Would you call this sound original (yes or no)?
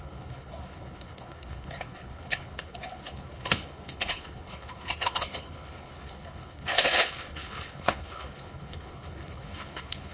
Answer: no